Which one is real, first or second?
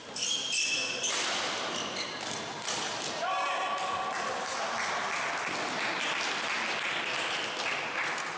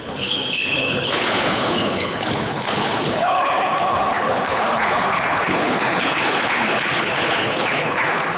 first